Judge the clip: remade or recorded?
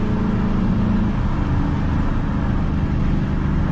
recorded